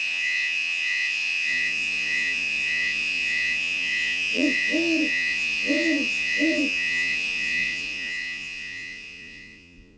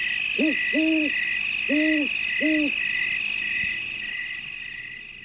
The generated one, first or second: first